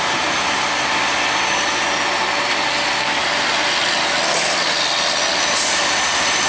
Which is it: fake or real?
real